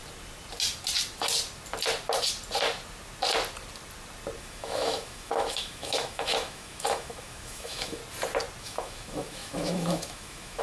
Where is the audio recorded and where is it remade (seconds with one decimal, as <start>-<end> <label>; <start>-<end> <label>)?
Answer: 0.0-4.4 recorded; 4.4-8.0 remade; 8.0-8.6 recorded; 8.6-10.6 remade